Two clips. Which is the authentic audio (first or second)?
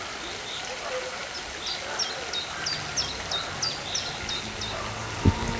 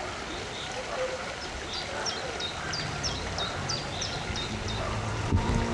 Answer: first